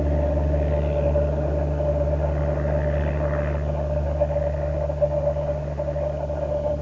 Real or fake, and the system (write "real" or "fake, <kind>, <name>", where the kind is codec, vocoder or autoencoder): real